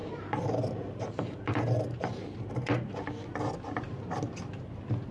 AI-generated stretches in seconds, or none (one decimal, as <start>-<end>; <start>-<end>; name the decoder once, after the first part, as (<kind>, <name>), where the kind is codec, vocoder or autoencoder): 0.0-3.1 (vocoder, BigVGAN v2)